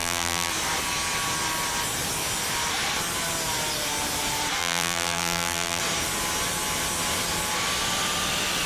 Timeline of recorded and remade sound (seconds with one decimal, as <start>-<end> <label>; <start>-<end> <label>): 0.0-0.5 remade; 0.5-4.6 recorded; 4.6-5.8 remade; 5.8-8.7 recorded